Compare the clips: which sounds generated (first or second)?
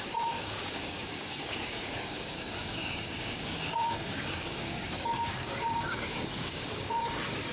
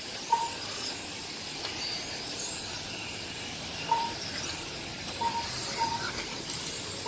first